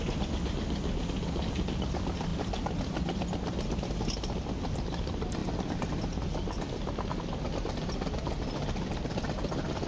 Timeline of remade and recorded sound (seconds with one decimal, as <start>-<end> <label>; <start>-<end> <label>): 0.0-9.9 recorded